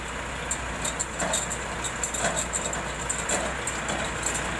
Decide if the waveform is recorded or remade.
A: recorded